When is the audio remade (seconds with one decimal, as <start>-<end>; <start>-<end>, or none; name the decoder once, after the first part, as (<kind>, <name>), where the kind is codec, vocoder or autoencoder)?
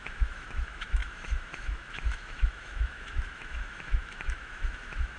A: 0.0-5.2 (autoencoder, DAC-VAE)